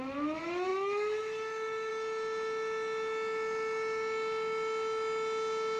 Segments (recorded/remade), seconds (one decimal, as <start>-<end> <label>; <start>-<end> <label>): 0.0-1.9 remade; 1.9-5.8 recorded